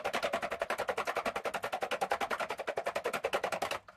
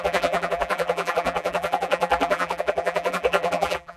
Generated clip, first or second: second